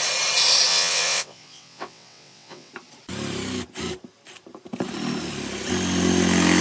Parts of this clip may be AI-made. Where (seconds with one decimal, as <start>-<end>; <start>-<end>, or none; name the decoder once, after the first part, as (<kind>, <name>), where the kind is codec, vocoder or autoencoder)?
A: 0.7-2.7 (vocoder, WaveNeXt)